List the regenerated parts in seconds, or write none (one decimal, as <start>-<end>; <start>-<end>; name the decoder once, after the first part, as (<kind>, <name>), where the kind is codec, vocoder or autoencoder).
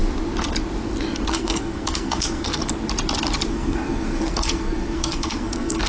1.3-2.6 (codec, SNAC); 3.5-5.9